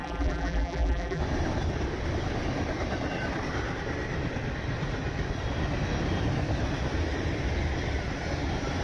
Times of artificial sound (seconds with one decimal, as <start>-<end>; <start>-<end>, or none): 0.0-1.2